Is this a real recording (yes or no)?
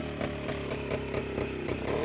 yes